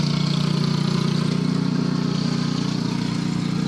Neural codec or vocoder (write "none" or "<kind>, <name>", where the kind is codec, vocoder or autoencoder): none